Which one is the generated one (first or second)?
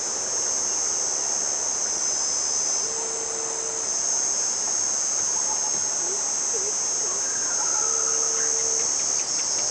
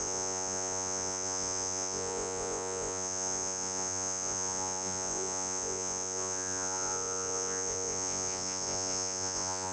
second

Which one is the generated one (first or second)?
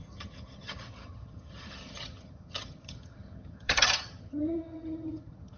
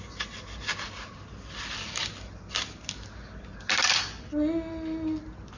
first